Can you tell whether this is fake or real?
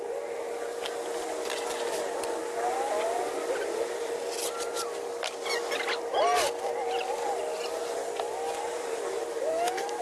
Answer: real